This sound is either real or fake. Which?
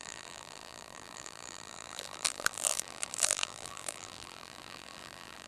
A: fake